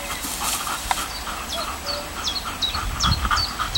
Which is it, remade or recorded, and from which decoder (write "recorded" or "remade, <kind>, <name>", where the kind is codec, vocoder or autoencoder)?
recorded